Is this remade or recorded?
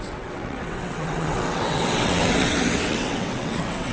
remade